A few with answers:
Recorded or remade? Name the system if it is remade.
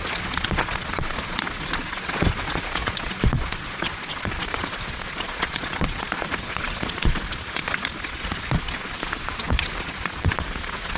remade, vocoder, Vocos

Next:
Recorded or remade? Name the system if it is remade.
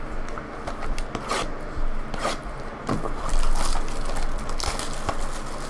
recorded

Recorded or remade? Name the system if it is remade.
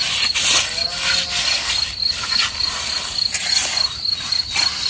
recorded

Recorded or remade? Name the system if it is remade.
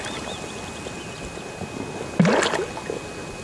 recorded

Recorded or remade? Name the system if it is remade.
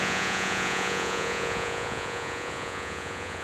remade, vocoder, Vocos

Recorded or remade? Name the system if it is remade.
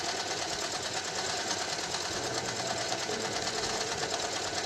remade, vocoder, Vocos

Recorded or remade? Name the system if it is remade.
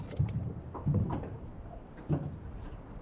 recorded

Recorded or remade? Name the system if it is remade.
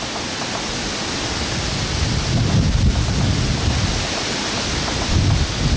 recorded